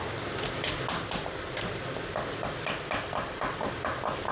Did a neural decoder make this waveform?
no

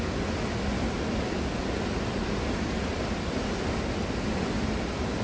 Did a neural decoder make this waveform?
no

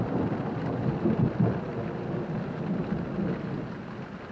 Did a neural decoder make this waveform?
no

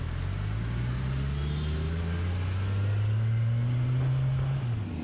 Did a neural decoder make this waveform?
no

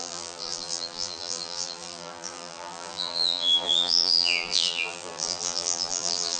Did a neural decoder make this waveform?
yes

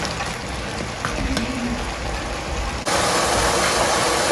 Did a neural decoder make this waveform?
no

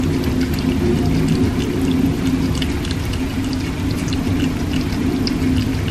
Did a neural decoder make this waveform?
no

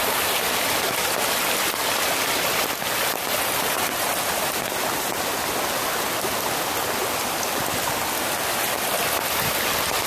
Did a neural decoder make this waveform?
no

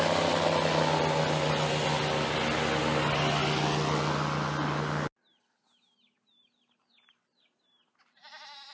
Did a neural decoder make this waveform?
no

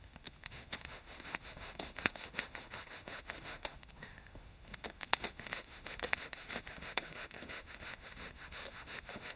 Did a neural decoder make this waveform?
yes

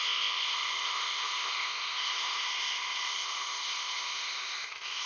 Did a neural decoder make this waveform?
yes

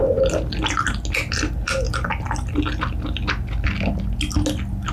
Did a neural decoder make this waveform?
no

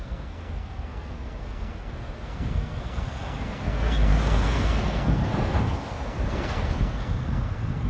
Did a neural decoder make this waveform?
yes